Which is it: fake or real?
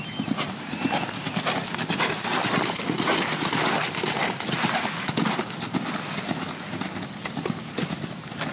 real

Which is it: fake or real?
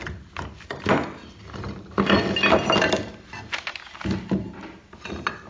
real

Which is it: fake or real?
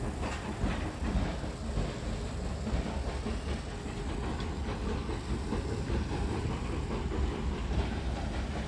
real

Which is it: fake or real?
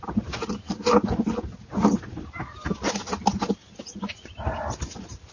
real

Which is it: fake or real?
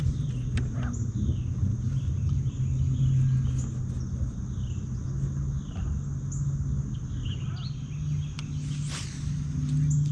real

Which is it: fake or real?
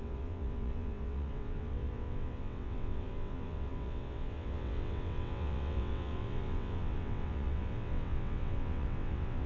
fake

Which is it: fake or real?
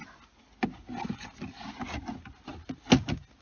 real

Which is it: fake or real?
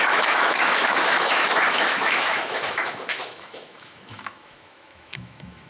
fake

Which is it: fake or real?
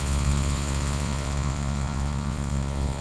fake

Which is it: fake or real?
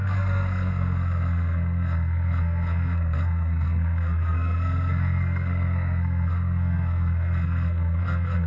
fake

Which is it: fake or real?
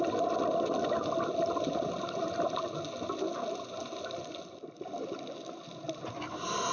real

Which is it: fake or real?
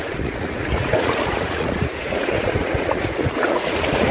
fake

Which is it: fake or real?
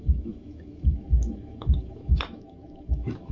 fake